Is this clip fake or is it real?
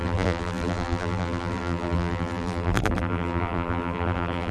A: fake